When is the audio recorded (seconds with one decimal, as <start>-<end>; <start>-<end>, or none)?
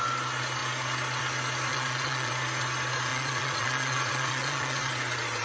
0.0-1.7; 2.3-3.1; 4.9-5.4